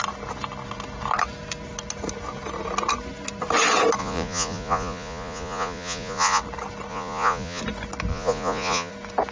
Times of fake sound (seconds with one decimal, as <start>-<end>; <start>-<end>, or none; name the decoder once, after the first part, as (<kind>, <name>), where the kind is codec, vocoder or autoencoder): 4.0-6.4 (vocoder, Vocos); 6.9-7.6; 8.1-8.9